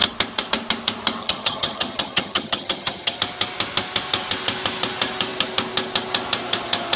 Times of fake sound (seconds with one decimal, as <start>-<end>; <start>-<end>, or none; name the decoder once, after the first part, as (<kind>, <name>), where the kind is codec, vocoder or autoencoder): 1.2-3.2 (vocoder, HiFi-GAN)